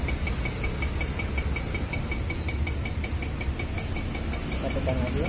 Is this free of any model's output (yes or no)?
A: yes